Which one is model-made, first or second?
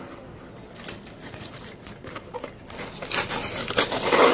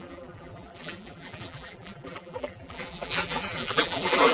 second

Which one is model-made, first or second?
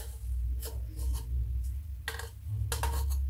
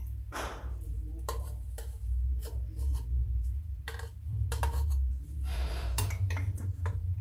second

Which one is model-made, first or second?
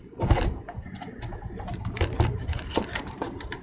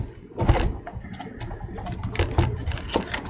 first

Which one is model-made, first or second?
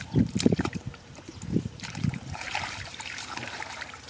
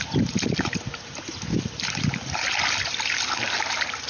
first